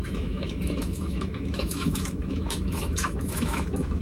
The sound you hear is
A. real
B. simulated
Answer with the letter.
B